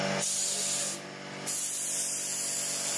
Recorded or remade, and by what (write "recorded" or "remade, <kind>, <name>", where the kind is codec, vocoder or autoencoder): recorded